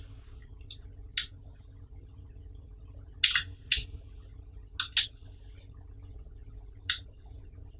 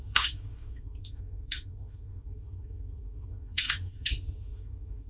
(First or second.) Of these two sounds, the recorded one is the first